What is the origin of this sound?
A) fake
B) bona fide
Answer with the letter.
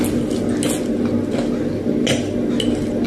B